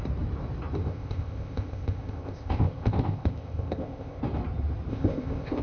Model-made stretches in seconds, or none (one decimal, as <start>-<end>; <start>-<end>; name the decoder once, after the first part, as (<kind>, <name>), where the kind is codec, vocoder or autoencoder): 0.8-4.2 (codec, ZipCodec); 4.9-5.6